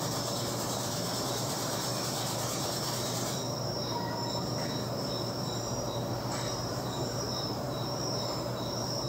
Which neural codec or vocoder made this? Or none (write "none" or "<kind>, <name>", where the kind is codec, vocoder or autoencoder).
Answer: vocoder, BigVGAN v2